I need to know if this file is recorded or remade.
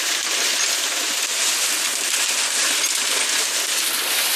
recorded